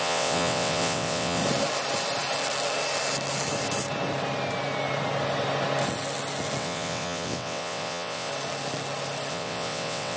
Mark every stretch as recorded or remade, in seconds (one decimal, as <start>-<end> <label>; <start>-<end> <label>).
0.0-1.4 remade; 1.4-6.6 recorded; 6.6-8.3 remade; 8.3-9.3 recorded; 9.3-10.2 remade